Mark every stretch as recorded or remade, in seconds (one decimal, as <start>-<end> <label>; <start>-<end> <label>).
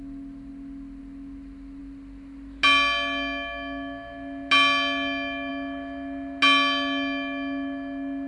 0.0-8.3 recorded